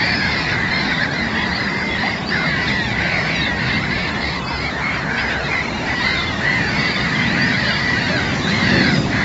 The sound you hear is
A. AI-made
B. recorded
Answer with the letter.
A